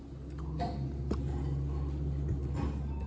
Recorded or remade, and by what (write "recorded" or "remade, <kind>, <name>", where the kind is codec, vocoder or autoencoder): recorded